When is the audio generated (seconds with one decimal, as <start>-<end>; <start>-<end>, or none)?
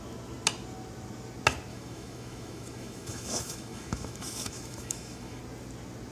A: 1.7-5.4